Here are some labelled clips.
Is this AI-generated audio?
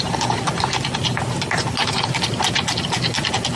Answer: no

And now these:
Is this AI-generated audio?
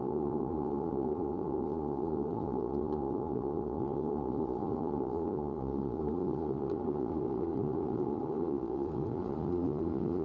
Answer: yes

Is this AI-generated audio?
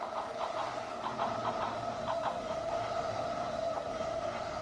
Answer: no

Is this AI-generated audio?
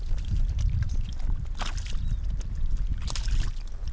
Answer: no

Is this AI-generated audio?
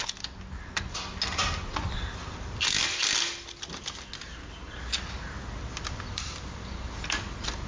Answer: no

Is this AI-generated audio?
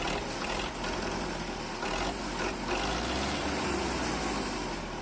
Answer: no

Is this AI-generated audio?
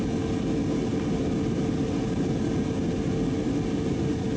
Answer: no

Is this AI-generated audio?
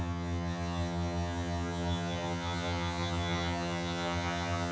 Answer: yes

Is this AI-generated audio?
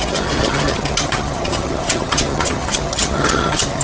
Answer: yes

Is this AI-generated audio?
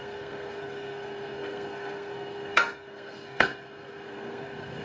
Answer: yes